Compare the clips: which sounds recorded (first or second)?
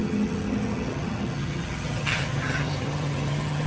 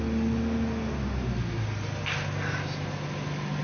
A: second